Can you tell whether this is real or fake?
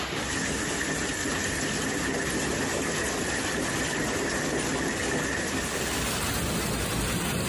real